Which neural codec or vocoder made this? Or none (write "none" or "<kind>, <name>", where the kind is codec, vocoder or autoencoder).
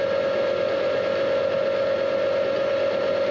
none